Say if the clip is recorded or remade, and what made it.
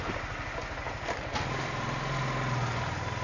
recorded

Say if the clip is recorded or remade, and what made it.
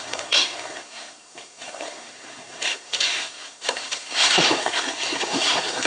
remade, codec, SNAC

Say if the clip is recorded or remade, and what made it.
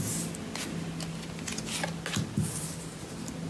recorded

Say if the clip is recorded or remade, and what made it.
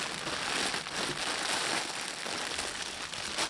recorded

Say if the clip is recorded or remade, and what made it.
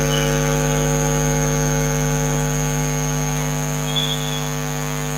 recorded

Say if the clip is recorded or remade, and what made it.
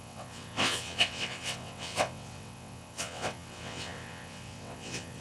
remade, vocoder, WaveNeXt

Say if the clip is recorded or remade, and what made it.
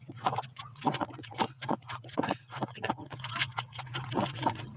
remade, vocoder, WaveNeXt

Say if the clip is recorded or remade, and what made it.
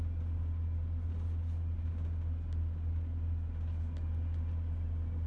recorded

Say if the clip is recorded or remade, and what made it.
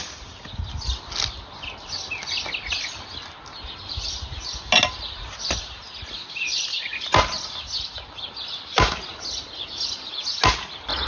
recorded